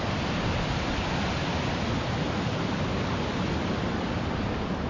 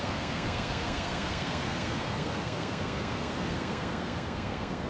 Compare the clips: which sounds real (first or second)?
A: first